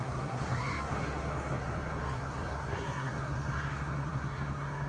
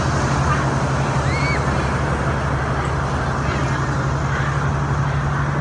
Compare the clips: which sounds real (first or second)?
second